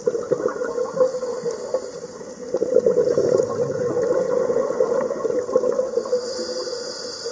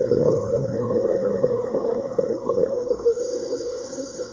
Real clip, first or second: first